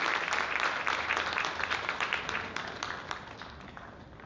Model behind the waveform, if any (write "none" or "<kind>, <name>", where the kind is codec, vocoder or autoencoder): none